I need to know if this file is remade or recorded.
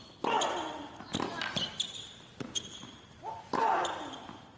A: recorded